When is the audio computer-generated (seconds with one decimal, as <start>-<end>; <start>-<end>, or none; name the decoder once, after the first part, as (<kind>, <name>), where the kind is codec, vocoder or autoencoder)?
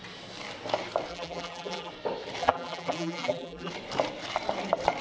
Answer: 1.1-1.9 (vocoder, BigVGAN v2); 2.4-3.7